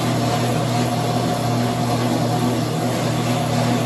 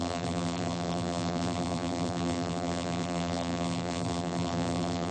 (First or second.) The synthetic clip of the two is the second